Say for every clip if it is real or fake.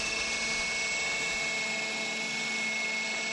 real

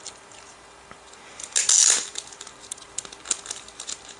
real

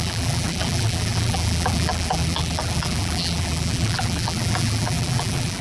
fake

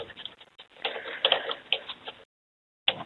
real